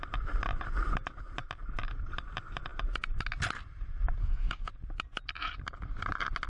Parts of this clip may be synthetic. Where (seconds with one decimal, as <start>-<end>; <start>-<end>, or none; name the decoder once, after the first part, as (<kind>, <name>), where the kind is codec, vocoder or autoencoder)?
4.2-4.7 (codec, DAC)